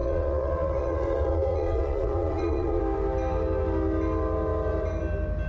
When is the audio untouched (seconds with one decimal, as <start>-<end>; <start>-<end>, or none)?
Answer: 2.8-5.5